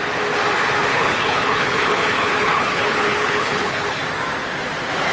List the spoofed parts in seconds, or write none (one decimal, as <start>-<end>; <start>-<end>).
0.9-4.0